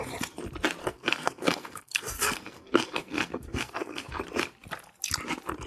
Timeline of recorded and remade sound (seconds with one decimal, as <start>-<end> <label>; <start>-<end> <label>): 0.0-0.8 recorded; 0.8-4.2 remade; 4.2-5.7 recorded